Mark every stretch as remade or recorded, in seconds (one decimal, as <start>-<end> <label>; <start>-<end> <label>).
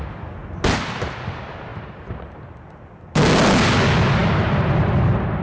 0.0-1.7 recorded; 1.7-2.3 remade; 2.3-5.4 recorded